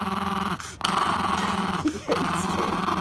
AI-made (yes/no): no